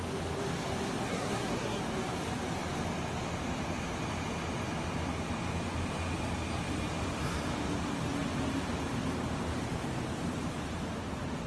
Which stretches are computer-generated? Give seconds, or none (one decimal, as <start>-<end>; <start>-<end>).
1.0-1.8